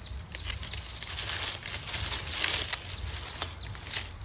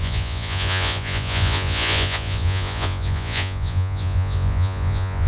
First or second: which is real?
first